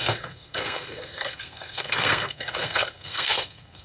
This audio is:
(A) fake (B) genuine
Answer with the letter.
A